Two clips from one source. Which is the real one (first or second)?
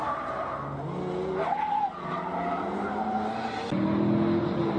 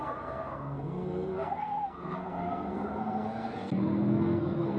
first